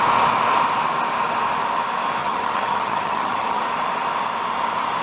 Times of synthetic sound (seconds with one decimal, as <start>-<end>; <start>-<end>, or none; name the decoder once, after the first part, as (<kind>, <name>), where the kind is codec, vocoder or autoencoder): 2.2-3.6 (vocoder, HiFi-GAN)

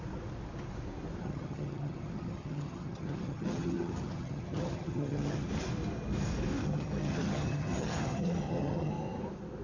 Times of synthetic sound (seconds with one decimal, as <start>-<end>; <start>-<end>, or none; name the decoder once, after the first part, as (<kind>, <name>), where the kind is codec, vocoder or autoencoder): 1.2-5.5 (vocoder, HiFi-GAN); 6.6-8.9

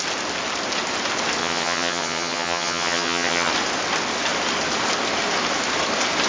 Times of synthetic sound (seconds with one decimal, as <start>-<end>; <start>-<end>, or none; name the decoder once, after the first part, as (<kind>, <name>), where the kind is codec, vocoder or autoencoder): 1.4-3.5 (vocoder, HiFi-GAN)

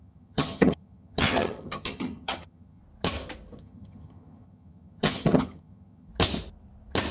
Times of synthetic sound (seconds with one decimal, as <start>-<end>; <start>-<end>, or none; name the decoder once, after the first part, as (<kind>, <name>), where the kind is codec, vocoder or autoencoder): 0.0-2.8 (vocoder, HiFi-GAN); 3.6-6.1